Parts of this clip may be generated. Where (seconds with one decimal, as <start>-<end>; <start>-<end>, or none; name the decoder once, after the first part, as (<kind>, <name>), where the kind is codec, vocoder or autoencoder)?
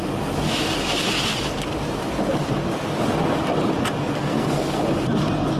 4.2-4.8 (codec, SNAC)